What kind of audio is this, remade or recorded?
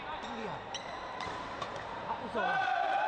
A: remade